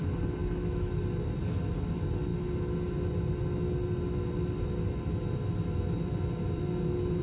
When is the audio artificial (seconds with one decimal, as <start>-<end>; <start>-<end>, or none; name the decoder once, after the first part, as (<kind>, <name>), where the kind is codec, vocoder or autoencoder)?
0.4-1.0 (autoencoder, DAC-VAE)